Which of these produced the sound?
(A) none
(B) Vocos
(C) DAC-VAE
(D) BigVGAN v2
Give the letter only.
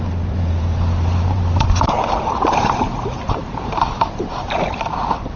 D